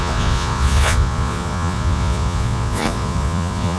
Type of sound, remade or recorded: remade